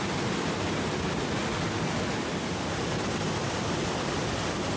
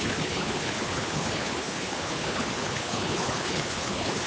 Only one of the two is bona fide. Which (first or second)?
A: first